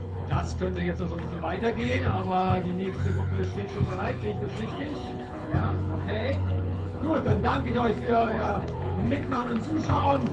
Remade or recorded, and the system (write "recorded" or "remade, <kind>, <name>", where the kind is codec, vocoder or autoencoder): remade, codec, HILCodec